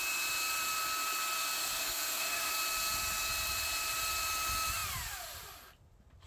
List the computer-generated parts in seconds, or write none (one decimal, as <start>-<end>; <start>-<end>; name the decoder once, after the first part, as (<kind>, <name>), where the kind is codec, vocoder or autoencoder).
1.6-2.5 (codec, SNAC)